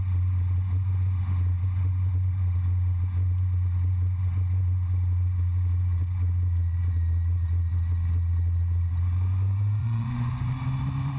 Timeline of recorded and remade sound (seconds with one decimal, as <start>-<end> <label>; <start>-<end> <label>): 0.0-9.8 recorded; 9.8-10.4 remade; 10.4-11.2 recorded